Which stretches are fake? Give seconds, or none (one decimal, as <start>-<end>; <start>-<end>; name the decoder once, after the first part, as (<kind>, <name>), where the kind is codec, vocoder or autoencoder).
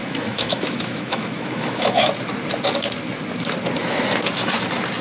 0.0-2.1 (autoencoder, DAC-VAE)